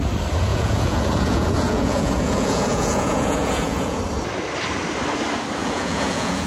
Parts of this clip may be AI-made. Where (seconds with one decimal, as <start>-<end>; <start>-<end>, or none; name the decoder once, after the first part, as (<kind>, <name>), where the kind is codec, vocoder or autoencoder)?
0.5-4.0 (vocoder, Vocos); 5.6-6.5